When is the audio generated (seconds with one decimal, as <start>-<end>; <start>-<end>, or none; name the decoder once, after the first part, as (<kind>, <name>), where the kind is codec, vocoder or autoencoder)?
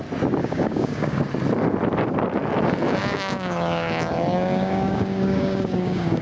0.4-1.2 (codec, DAC); 3.0-6.2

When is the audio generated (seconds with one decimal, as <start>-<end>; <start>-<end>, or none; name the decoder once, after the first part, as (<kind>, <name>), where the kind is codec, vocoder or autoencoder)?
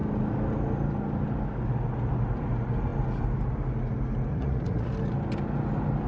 4.3-4.9 (vocoder, Vocos)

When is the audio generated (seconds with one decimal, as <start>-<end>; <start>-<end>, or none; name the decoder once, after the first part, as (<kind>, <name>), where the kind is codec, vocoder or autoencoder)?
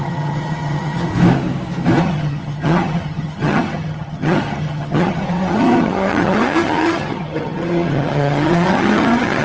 0.0-1.1 (vocoder, HiFi-GAN); 2.0-9.4